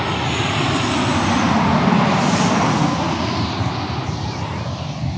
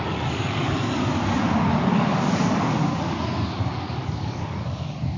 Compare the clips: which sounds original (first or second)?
first